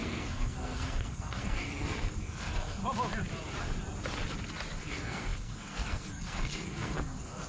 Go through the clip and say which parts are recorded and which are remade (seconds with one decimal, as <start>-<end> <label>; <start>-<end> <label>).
0.0-2.8 remade; 2.8-4.8 recorded; 4.8-7.5 remade